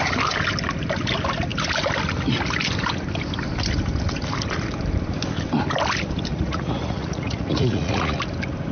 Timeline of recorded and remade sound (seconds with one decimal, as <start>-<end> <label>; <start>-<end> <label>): 0.0-6.3 recorded; 6.3-8.2 remade; 8.2-8.7 recorded